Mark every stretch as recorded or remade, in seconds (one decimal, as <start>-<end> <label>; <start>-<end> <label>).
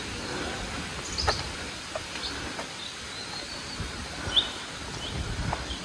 0.0-5.8 recorded